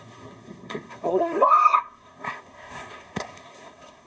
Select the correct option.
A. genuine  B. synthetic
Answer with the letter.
B